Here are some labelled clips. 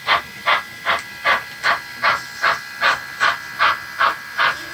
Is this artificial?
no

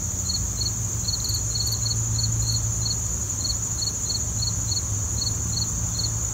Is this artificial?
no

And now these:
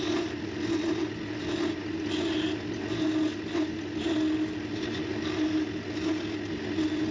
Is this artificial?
no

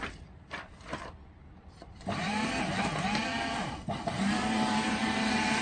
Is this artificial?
yes